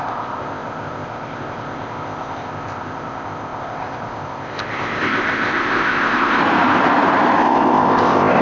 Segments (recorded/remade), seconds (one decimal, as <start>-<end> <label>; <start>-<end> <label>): 0.0-6.4 remade; 6.4-7.4 recorded; 7.4-8.4 remade